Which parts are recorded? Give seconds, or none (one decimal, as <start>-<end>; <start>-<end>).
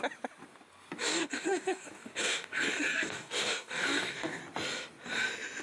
0.0-1.0; 4.4-5.6